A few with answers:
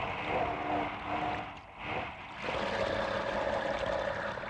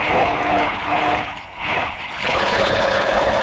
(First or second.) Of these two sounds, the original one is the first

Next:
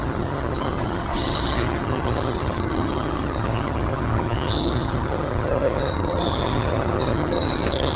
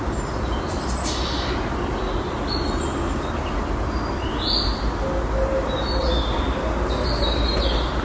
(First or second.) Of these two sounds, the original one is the second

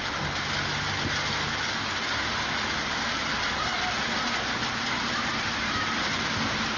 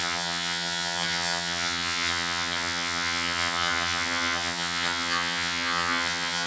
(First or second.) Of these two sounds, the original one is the first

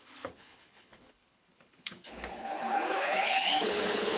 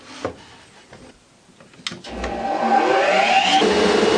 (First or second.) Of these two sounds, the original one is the second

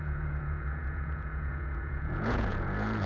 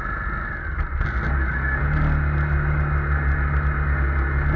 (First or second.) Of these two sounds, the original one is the second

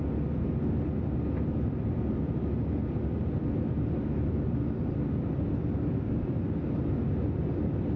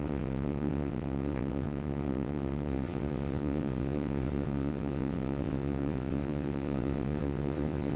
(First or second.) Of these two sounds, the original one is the first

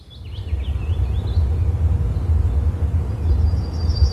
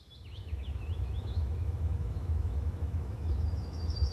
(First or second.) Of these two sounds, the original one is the first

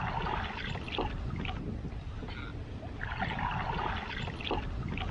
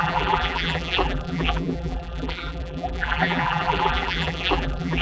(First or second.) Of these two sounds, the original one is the first